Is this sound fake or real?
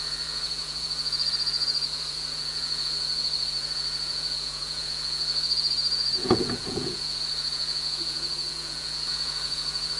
fake